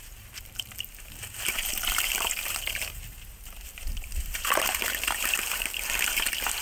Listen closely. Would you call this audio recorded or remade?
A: remade